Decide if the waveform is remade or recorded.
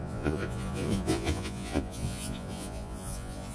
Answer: remade